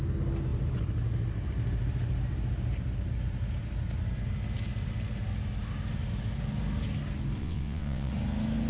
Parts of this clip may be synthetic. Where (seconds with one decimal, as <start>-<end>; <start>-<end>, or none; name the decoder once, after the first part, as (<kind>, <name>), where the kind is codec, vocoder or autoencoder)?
7.4-8.1 (vocoder, WaveNeXt)